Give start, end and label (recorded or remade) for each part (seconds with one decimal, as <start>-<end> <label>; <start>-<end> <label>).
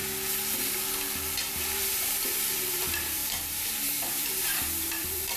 0.0-1.5 recorded; 1.5-5.4 remade